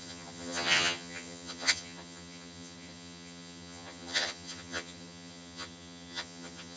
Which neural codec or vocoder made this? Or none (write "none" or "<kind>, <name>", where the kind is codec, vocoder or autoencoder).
vocoder, HiFi-GAN